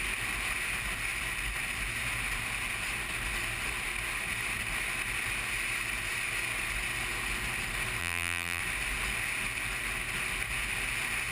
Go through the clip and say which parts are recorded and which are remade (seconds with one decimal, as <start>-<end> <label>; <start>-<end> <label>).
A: 0.0-8.0 recorded; 8.0-8.6 remade; 8.6-11.3 recorded